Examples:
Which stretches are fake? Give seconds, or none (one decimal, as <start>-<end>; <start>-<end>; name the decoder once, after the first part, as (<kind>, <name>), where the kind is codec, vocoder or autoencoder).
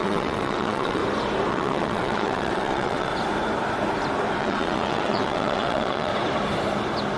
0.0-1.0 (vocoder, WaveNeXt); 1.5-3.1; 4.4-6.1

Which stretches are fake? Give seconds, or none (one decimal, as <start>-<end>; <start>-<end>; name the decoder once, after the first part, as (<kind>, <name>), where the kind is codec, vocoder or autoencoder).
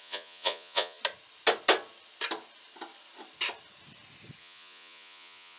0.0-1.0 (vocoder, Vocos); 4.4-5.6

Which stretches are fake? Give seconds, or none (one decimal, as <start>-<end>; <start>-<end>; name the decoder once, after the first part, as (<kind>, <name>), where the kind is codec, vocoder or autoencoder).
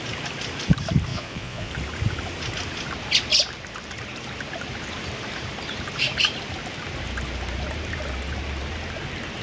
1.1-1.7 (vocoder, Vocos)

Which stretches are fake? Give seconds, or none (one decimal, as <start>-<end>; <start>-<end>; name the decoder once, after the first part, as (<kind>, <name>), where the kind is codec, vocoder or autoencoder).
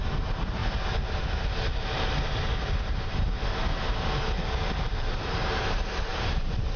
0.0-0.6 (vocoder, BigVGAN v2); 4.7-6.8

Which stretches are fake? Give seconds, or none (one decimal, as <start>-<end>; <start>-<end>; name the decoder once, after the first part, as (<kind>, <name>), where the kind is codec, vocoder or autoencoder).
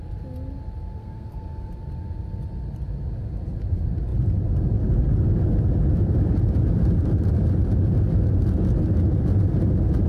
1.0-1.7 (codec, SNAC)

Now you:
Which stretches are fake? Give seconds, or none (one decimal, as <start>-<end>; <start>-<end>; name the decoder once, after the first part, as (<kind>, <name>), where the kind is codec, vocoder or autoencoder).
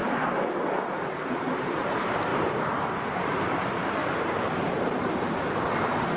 1.0-6.2 (vocoder, BigVGAN v2)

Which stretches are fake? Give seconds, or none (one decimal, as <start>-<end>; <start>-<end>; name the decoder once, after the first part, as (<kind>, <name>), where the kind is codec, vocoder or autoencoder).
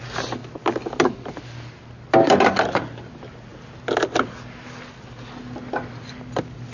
none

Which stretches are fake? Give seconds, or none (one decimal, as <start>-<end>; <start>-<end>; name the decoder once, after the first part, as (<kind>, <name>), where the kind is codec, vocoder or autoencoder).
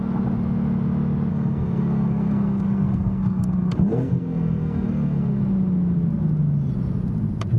1.3-5.4 (codec, SNAC)